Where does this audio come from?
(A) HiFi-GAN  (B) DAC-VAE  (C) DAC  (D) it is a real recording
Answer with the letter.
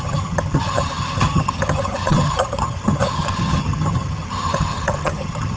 A